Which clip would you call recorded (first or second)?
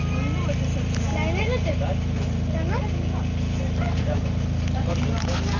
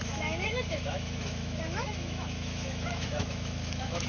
first